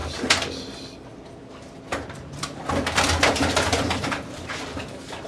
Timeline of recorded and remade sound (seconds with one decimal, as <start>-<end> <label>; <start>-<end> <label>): 0.0-5.3 recorded